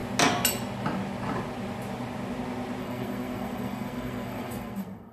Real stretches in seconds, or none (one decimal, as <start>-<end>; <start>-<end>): 0.0-2.8